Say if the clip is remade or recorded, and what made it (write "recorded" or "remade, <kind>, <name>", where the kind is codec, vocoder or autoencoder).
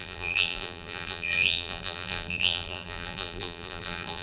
remade, vocoder, BigVGAN v2